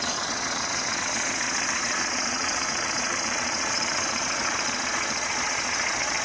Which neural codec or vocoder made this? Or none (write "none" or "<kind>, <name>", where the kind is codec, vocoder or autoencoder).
vocoder, Vocos